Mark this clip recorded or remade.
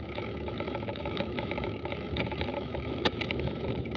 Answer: remade